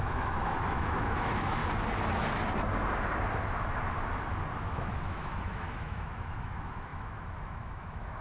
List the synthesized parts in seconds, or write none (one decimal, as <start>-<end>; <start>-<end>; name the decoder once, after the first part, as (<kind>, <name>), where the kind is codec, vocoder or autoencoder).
0.0-1.6 (autoencoder, DAC-VAE); 4.6-8.2